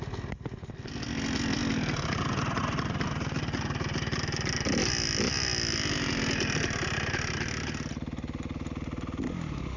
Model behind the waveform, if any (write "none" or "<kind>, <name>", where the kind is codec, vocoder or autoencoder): none